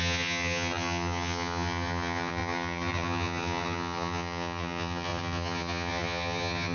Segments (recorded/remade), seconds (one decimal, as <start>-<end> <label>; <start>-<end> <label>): 0.0-6.7 remade